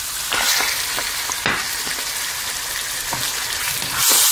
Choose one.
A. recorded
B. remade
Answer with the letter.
A